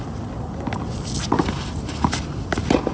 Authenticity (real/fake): real